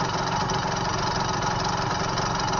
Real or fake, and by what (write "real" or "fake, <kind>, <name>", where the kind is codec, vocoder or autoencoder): real